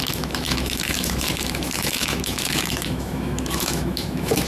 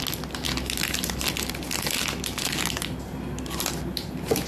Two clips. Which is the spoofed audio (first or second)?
first